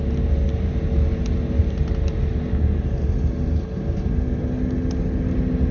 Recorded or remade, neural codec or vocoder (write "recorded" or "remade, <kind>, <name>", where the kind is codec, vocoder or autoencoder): recorded